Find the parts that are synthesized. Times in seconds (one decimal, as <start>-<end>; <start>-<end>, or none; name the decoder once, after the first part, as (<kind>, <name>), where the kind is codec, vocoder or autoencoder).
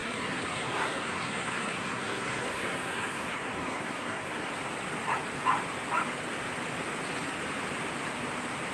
0.0-4.5 (codec, SNAC)